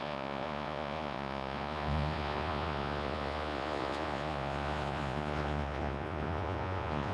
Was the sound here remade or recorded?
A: remade